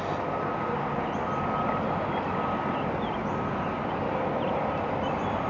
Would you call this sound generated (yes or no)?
no